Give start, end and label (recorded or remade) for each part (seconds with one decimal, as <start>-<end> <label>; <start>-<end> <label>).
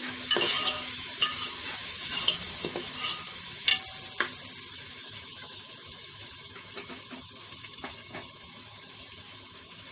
0.0-3.7 remade; 3.7-4.7 recorded; 4.7-9.9 remade